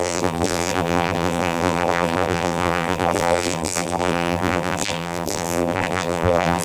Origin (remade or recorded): remade